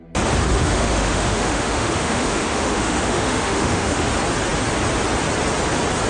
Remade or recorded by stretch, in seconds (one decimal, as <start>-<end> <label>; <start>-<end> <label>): 0.0-0.5 recorded; 0.5-4.1 remade; 4.1-6.1 recorded